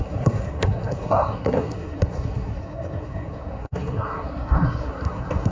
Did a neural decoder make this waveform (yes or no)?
yes